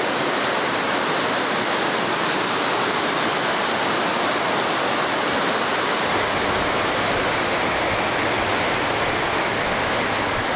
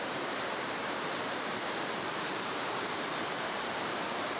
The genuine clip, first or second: first